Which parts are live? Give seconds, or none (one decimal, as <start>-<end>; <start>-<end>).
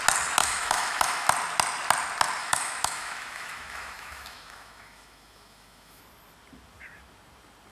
0.0-0.4; 1.3-2.4; 6.0-7.7